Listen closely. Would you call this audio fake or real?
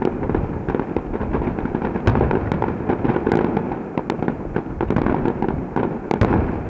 real